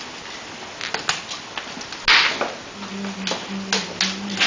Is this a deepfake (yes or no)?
no